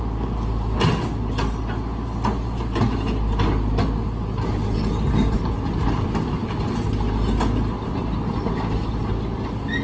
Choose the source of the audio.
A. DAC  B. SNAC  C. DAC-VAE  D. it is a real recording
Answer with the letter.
D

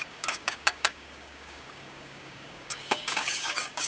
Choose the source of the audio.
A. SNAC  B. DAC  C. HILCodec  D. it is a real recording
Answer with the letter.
B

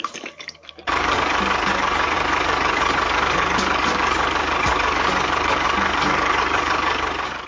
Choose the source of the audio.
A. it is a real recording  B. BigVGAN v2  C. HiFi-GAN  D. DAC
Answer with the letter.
D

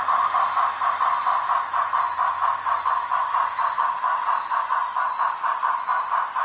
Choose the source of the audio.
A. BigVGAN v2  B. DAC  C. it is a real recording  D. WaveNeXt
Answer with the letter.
C